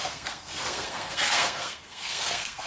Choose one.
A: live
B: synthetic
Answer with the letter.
B